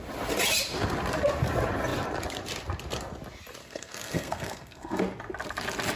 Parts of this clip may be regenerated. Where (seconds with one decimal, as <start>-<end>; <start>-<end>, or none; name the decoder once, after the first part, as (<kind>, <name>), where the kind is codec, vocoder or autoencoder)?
3.6-5.0 (codec, SNAC)

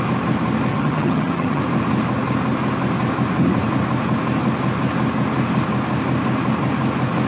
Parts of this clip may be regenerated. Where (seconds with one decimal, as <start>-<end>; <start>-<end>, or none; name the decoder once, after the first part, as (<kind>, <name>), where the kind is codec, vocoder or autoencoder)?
0.7-1.6 (vocoder, HiFi-GAN)

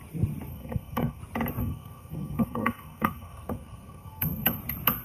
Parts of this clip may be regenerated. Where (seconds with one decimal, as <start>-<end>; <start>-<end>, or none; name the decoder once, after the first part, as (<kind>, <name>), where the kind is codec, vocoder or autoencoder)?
0.5-1.2 (codec, SNAC); 1.6-4.6

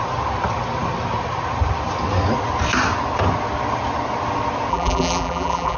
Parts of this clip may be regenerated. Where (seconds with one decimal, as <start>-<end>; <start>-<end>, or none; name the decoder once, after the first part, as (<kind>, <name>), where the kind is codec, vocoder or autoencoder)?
4.7-5.8 (vocoder, BigVGAN v2)

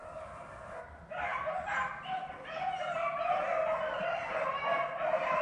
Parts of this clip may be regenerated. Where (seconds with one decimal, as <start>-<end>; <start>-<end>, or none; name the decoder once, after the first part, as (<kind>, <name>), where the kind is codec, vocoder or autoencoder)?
none

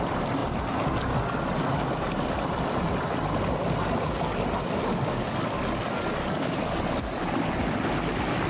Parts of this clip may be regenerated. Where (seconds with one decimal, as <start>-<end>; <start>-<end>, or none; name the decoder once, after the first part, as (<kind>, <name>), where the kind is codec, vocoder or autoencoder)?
none